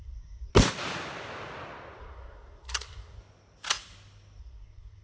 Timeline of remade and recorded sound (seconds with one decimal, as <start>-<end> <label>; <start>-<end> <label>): 0.0-0.5 remade; 0.5-2.0 recorded; 2.0-3.2 remade; 3.2-4.4 recorded; 4.4-5.0 remade